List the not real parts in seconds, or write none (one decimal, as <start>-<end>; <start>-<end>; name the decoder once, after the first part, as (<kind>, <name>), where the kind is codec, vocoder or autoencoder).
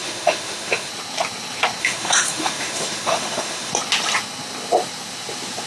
0.0-0.9 (autoencoder, DAC-VAE); 1.8-3.7